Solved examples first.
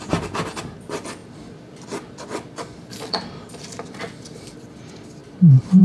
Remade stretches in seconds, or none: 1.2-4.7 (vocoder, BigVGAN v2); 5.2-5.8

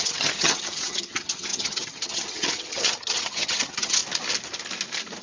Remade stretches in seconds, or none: 0.0-4.0 (vocoder, HiFi-GAN)

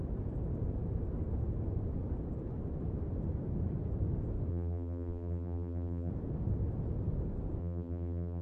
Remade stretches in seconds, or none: 4.5-6.1 (vocoder, BigVGAN v2); 7.6-8.4

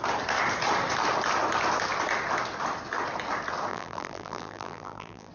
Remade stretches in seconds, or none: 3.7-5.3 (vocoder, BigVGAN v2)

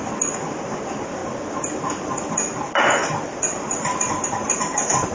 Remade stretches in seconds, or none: none

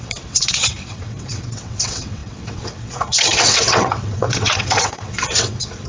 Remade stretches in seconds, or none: 0.0-5.9 (vocoder, WaveNeXt)

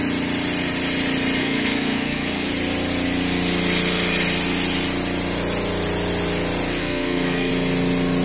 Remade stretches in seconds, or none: 1.4-2.5 (codec, SNAC); 6.8-7.5

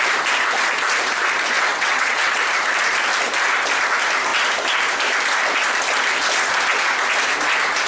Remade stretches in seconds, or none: 1.7-2.4 (vocoder, WaveNeXt)